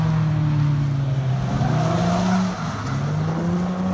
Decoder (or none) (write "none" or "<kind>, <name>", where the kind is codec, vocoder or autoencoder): none